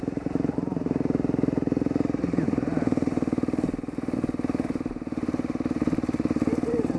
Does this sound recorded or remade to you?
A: remade